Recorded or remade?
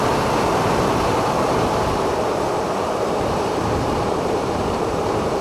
remade